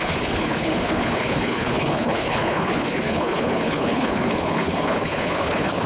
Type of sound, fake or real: fake